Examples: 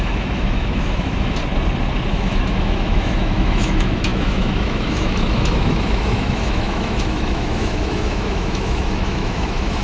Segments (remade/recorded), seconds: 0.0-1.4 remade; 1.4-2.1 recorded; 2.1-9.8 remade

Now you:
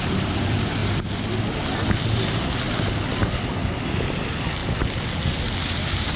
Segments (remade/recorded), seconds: 0.0-0.8 remade; 0.8-4.1 recorded; 4.1-4.6 remade; 4.6-6.2 recorded